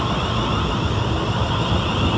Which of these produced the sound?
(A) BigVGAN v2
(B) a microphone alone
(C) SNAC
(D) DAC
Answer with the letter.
B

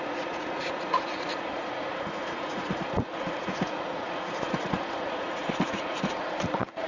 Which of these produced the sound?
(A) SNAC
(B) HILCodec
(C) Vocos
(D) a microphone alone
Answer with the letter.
C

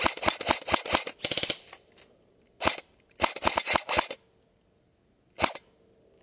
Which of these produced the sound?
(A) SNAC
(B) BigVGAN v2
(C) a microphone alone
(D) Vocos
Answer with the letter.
C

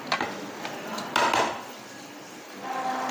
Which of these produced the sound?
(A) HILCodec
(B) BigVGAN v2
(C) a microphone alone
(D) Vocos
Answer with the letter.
C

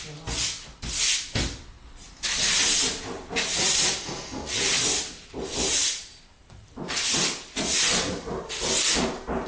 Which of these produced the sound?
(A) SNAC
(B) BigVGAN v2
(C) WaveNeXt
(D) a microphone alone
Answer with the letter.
D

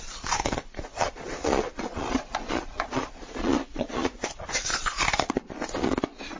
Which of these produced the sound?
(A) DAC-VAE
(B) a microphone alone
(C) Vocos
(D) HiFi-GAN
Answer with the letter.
C